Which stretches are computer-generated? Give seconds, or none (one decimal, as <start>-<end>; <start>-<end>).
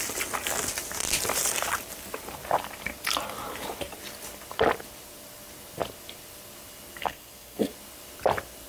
7.0-7.7